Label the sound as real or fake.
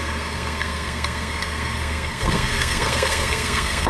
fake